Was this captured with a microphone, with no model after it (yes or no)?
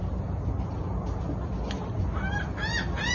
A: yes